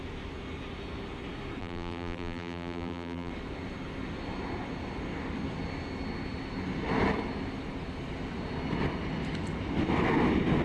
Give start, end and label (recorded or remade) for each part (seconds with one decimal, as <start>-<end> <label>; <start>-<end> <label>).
0.0-1.6 recorded; 1.6-3.3 remade; 3.3-10.6 recorded